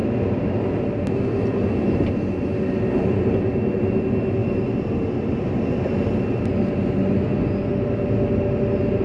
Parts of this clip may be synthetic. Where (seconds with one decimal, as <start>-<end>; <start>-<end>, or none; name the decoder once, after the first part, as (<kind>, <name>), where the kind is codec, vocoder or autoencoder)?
none